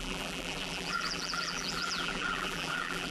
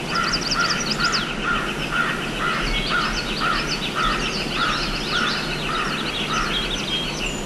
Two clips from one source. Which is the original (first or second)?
second